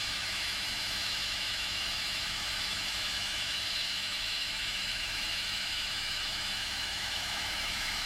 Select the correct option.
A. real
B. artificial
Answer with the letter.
B